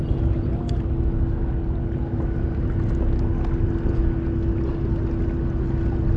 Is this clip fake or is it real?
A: real